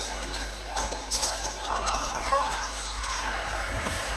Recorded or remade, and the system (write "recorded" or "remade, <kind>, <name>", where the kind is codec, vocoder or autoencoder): remade, codec, SNAC